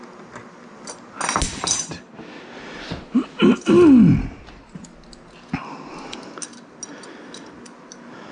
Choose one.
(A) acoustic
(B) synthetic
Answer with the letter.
A